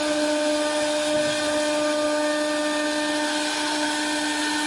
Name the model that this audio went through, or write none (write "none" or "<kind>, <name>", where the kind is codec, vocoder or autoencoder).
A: none